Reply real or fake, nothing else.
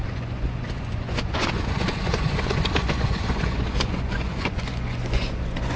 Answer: fake